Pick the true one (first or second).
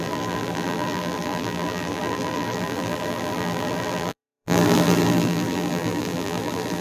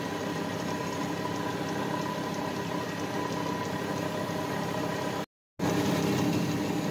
second